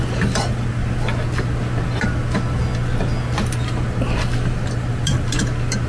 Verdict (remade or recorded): recorded